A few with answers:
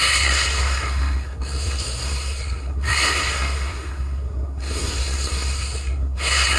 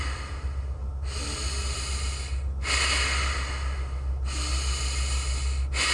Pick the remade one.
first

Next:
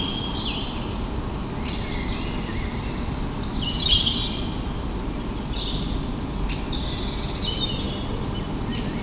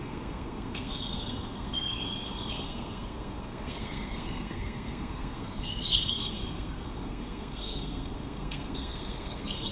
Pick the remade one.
second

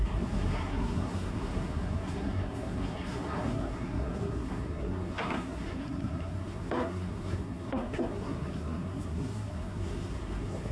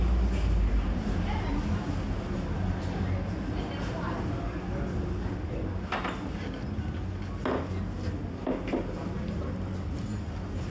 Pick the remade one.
first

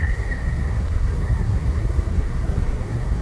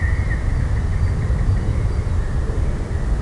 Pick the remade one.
first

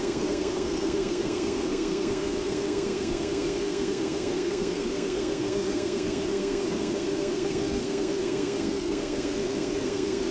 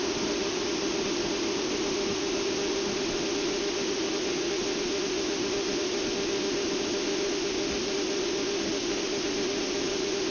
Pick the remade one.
first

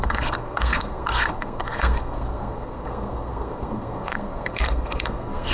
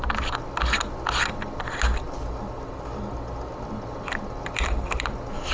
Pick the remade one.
first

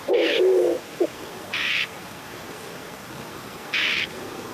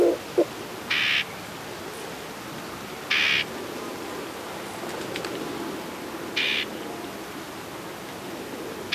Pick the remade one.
first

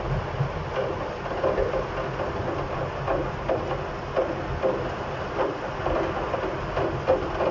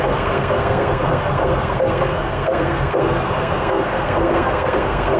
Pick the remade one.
second